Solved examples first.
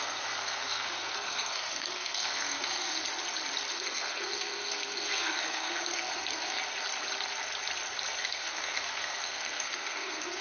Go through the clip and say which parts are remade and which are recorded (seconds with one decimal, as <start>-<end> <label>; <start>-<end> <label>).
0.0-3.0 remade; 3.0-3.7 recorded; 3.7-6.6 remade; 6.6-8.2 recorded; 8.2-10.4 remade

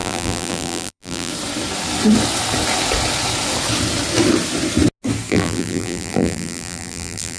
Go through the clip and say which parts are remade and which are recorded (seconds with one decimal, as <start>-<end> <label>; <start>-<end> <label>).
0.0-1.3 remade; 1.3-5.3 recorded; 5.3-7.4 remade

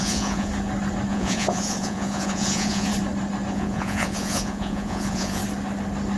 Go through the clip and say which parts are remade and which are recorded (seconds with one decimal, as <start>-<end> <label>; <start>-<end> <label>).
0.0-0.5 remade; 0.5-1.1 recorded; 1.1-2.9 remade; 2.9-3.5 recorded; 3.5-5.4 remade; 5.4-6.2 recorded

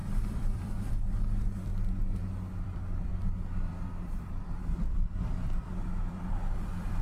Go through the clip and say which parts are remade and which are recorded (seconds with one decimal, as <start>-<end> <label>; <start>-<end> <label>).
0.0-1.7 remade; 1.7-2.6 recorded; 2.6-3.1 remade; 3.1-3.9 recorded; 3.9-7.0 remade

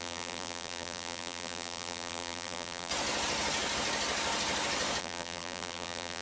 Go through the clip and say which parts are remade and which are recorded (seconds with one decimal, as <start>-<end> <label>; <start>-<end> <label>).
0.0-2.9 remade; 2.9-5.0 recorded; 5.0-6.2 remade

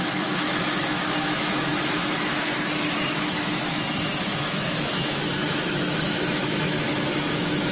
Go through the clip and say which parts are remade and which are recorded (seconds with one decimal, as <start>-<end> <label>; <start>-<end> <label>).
0.0-7.7 remade

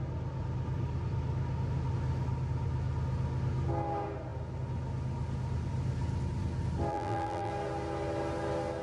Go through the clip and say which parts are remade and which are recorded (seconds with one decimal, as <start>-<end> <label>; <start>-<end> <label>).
0.0-6.9 recorded; 6.9-7.5 remade; 7.5-8.8 recorded

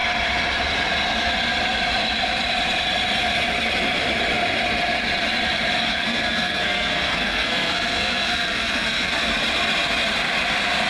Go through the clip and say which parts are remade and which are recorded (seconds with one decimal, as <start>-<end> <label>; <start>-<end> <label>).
0.0-5.9 recorded; 5.9-9.1 remade; 9.1-10.9 recorded